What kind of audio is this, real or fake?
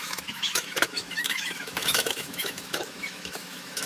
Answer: fake